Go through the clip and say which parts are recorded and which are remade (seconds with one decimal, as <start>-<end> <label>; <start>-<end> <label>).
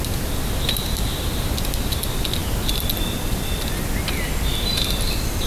0.0-5.5 recorded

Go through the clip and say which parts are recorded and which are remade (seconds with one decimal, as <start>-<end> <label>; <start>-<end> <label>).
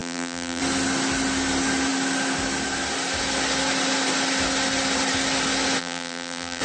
0.0-0.6 remade; 0.6-5.8 recorded; 5.8-6.6 remade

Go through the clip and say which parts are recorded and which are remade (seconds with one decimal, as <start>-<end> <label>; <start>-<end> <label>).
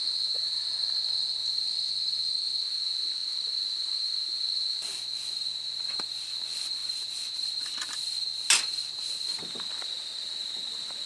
0.0-1.4 recorded; 1.4-1.9 remade; 1.9-6.8 recorded; 6.8-7.7 remade; 7.7-11.1 recorded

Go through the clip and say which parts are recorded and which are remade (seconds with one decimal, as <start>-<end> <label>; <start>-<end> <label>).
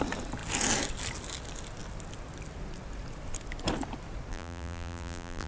0.0-4.3 recorded; 4.3-5.5 remade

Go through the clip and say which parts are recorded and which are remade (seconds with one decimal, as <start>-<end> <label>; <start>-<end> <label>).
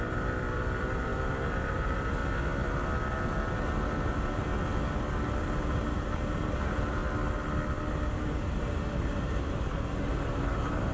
0.0-2.2 remade; 2.2-4.0 recorded; 4.0-4.5 remade; 4.5-5.4 recorded; 5.4-7.0 remade; 7.0-8.1 recorded; 8.1-10.9 remade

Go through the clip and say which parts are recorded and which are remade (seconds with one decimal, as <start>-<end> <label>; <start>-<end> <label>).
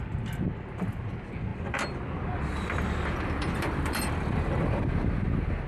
0.0-1.5 recorded; 1.5-4.9 remade; 4.9-5.7 recorded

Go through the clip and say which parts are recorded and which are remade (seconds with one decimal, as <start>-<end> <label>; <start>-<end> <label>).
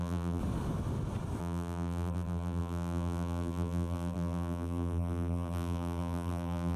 0.0-0.4 remade; 0.4-1.4 recorded; 1.4-6.8 remade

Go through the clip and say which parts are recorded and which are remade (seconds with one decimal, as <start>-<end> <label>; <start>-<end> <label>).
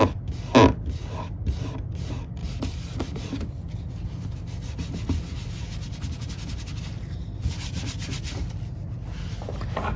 0.0-2.4 recorded; 2.4-3.7 remade; 3.7-10.0 recorded